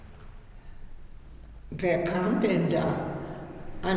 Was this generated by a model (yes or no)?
no